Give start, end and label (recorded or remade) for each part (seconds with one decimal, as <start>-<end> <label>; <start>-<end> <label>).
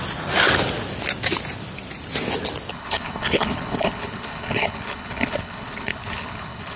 0.0-2.7 recorded; 2.7-6.8 remade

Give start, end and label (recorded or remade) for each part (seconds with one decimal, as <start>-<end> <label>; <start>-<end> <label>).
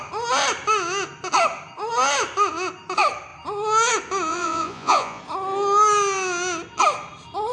0.0-4.3 recorded; 4.3-5.2 remade; 5.2-7.5 recorded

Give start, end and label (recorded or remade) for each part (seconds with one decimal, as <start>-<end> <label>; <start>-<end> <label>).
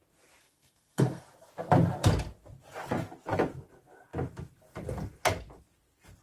0.0-0.4 recorded; 0.4-1.2 remade; 1.2-6.2 recorded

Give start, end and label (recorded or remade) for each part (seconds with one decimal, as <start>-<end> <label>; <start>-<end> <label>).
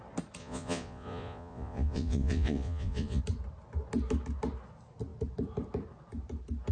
0.0-0.4 recorded; 0.4-3.2 remade; 3.2-6.7 recorded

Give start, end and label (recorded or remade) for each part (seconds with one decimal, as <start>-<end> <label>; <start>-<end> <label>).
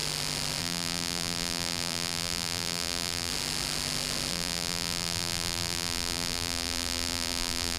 0.0-0.6 recorded; 0.6-3.3 remade; 3.3-4.3 recorded; 4.3-7.8 remade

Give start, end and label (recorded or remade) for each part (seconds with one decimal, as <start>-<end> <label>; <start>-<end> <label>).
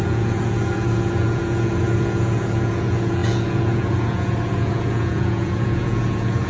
0.0-6.5 remade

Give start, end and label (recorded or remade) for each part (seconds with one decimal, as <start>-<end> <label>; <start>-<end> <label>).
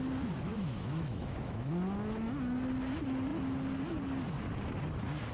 0.0-0.5 recorded; 0.5-1.7 remade; 1.7-5.3 recorded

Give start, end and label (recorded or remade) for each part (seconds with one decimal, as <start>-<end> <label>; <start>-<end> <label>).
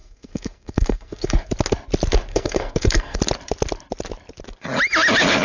0.0-1.5 remade; 1.5-2.3 recorded; 2.3-3.2 remade; 3.2-5.4 recorded